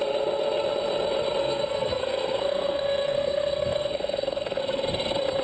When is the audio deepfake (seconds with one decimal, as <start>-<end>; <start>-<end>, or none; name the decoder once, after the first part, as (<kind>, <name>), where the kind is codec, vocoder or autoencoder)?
1.4-4.6 (codec, SNAC)